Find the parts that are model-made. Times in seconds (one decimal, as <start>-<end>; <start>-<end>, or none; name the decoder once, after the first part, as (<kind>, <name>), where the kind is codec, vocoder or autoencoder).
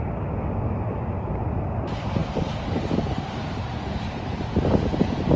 none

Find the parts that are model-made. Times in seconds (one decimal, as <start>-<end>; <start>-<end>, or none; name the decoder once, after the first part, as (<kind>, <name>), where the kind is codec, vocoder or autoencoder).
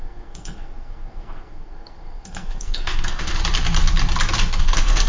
0.0-3.4 (codec, SNAC); 4.6-5.1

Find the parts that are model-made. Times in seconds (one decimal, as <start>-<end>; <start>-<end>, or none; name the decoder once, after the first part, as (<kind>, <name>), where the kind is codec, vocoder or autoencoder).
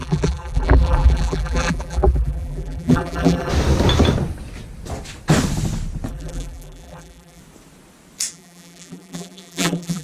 0.0-3.5 (vocoder, BigVGAN v2); 6.1-7.4; 8.3-10.0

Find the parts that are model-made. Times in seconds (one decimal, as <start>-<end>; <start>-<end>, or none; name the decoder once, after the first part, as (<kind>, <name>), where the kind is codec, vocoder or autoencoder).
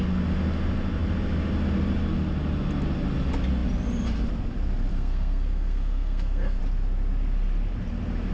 4.9-6.6 (codec, SNAC)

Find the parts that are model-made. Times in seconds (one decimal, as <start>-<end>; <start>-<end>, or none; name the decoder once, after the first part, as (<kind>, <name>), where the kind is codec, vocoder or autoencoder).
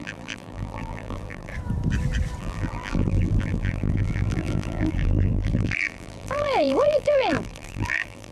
0.0-1.5 (vocoder, BigVGAN v2); 2.4-8.3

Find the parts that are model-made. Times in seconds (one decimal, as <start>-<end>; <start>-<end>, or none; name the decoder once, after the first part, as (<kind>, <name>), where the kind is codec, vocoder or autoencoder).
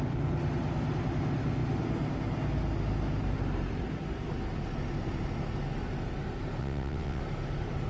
6.6-7.2 (vocoder, WaveNeXt)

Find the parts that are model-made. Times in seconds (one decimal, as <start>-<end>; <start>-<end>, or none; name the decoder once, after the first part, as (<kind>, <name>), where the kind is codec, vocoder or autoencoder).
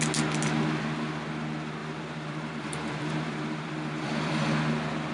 1.8-4.3 (vocoder, BigVGAN v2)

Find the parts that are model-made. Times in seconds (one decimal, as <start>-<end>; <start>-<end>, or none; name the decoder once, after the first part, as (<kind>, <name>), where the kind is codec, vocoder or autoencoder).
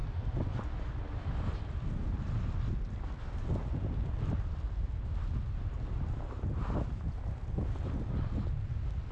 none